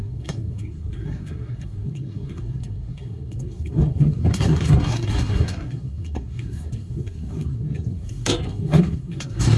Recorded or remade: remade